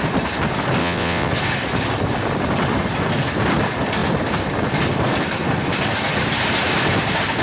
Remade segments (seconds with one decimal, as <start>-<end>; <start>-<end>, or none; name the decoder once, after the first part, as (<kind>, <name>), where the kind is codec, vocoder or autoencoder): 0.8-1.3 (vocoder, WaveNeXt)